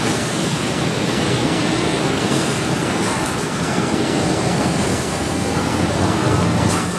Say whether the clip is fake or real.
fake